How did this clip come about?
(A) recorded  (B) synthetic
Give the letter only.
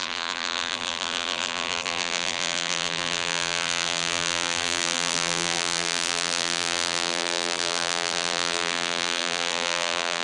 B